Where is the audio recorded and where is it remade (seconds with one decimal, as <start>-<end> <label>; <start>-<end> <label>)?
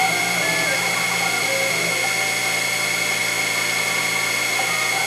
0.0-5.1 recorded